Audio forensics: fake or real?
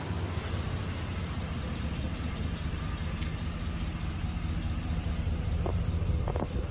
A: fake